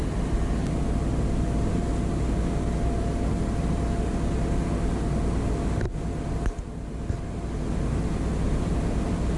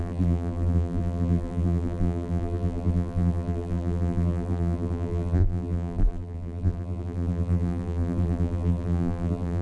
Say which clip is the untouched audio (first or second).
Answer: first